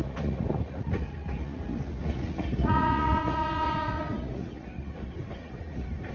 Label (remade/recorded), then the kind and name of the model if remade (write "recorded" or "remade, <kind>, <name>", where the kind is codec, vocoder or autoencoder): remade, vocoder, Vocos